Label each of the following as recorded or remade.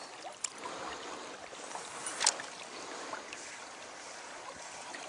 remade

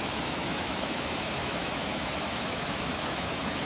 remade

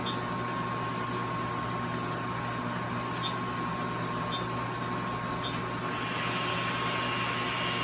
recorded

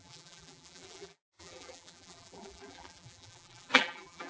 remade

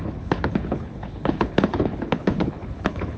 remade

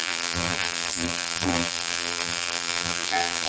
remade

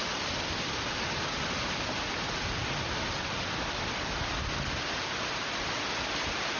recorded